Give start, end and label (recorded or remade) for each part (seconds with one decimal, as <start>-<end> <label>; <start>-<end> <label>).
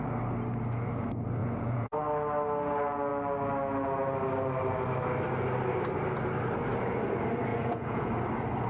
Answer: 0.0-1.4 recorded; 1.4-2.0 remade; 2.0-7.5 recorded; 7.5-8.1 remade; 8.1-8.7 recorded